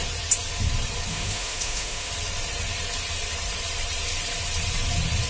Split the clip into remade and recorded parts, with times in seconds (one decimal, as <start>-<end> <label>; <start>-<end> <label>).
0.0-1.1 recorded; 1.1-2.1 remade; 2.1-5.3 recorded